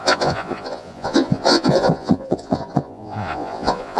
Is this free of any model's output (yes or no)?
no